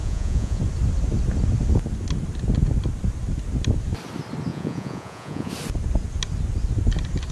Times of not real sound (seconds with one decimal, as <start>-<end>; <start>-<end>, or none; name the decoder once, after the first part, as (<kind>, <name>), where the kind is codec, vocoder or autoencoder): 0.0-0.6 (vocoder, Vocos); 4.5-5.5